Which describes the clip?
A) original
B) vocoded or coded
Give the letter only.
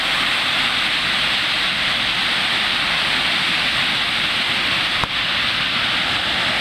A